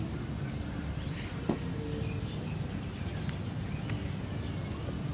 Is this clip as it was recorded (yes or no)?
yes